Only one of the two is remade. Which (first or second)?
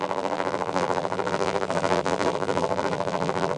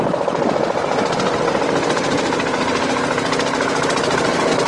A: first